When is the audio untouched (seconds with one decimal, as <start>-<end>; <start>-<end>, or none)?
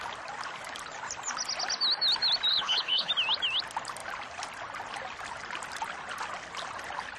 0.0-2.5; 3.1-7.2